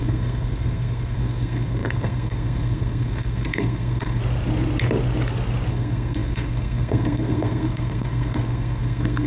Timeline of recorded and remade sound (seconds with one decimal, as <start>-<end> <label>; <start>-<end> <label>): 0.0-4.2 remade; 4.2-5.7 recorded; 5.7-9.3 remade